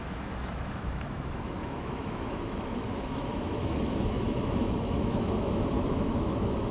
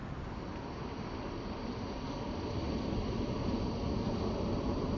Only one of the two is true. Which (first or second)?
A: second